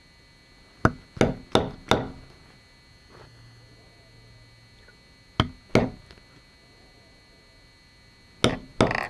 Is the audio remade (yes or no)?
no